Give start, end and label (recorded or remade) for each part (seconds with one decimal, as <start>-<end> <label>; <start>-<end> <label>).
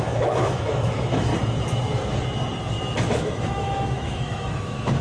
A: 0.0-1.3 remade; 1.3-3.1 recorded; 3.1-5.0 remade